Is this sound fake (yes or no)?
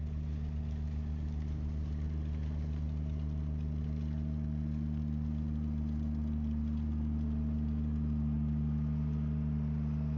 no